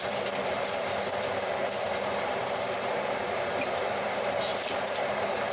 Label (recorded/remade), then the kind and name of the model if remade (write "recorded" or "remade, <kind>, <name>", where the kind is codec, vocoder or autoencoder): remade, vocoder, BigVGAN v2